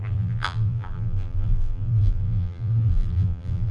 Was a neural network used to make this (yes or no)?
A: yes